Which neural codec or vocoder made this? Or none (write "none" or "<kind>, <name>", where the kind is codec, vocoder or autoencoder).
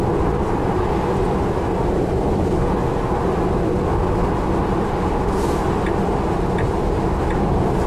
none